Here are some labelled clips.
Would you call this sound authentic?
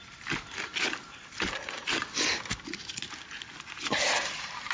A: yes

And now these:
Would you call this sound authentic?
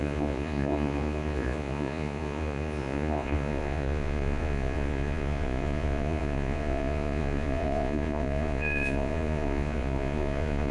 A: no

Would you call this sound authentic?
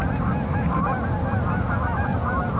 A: yes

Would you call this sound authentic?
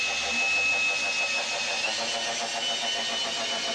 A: yes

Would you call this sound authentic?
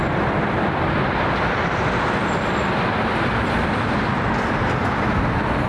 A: yes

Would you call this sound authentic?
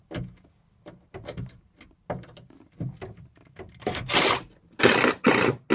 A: yes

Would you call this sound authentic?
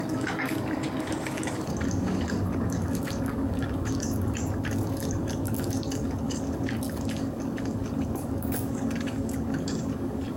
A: no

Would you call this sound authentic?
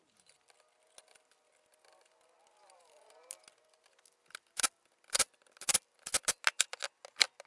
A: yes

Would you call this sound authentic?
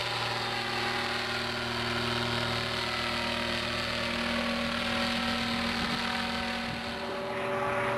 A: yes